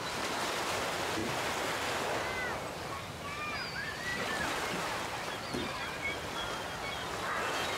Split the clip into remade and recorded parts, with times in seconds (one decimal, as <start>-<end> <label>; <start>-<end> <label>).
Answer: 0.0-7.8 recorded

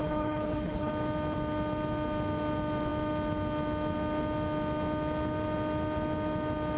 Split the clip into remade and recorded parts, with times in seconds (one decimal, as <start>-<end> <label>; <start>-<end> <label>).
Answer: 0.0-0.9 remade; 0.9-6.8 recorded

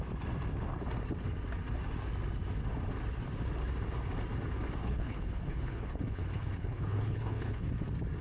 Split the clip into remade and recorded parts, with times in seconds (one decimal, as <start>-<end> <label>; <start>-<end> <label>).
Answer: 0.0-4.8 recorded; 4.8-7.7 remade; 7.7-8.2 recorded